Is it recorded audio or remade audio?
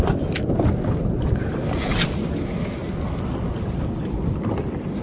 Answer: recorded